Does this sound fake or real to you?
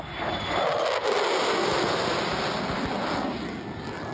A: real